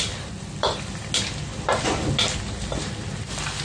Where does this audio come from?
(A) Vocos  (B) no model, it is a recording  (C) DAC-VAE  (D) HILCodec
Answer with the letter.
B